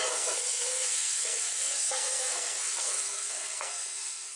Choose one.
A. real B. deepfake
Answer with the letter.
B